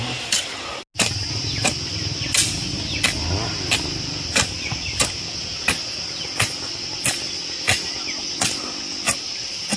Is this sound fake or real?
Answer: real